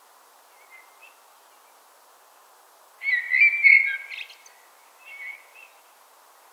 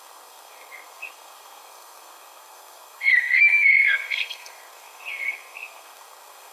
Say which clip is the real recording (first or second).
first